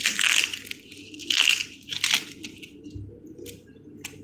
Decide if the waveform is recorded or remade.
recorded